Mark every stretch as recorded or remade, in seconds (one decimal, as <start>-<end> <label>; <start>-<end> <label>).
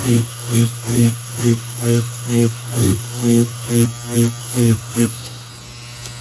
0.0-3.7 remade; 3.7-4.4 recorded; 4.4-5.5 remade; 5.5-6.2 recorded